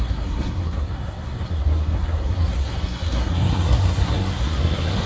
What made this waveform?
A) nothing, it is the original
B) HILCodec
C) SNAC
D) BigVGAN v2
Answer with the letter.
C